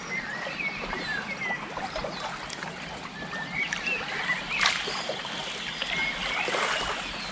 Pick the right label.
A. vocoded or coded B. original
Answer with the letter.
B